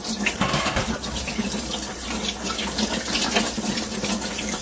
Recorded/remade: recorded